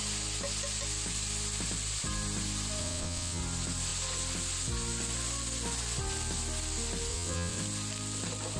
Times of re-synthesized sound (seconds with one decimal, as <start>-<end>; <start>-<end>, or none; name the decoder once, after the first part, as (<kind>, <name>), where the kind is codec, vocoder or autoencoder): 2.8-3.4 (vocoder, WaveNeXt); 7.1-7.6